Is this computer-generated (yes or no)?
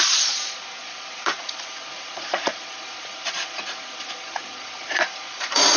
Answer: yes